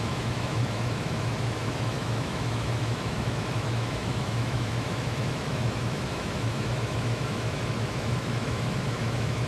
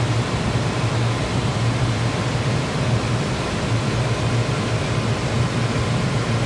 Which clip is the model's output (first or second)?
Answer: first